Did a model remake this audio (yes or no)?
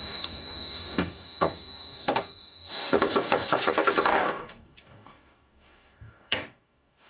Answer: yes